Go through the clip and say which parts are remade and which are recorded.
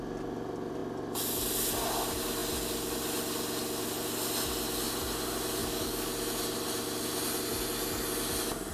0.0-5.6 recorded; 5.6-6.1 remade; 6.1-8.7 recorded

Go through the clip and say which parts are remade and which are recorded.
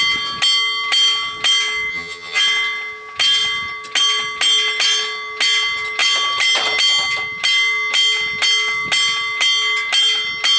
0.0-1.9 recorded; 1.9-2.4 remade; 2.4-10.6 recorded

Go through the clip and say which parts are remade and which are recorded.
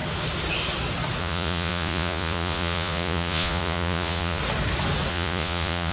0.0-1.2 recorded; 1.2-4.4 remade; 4.4-5.1 recorded; 5.1-5.9 remade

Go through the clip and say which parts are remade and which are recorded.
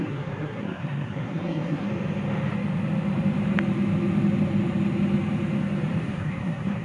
0.0-1.9 remade; 1.9-6.0 recorded; 6.0-6.8 remade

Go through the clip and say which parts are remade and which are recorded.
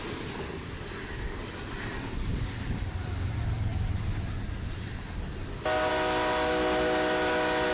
0.0-7.7 recorded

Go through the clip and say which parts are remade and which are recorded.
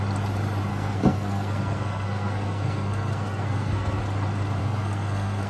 0.0-0.7 recorded; 0.7-4.0 remade; 4.0-4.6 recorded; 4.6-5.5 remade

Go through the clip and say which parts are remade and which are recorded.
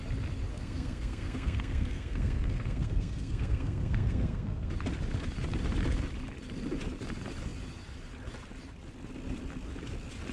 0.0-0.5 recorded; 0.5-4.7 remade; 4.7-10.3 recorded